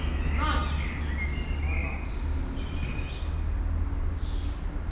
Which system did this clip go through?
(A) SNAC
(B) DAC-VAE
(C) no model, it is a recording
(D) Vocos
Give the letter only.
C